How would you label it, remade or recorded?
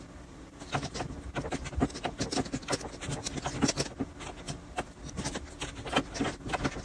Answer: recorded